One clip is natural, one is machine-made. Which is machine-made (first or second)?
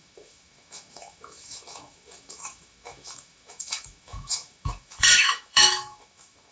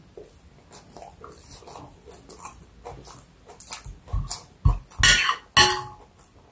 first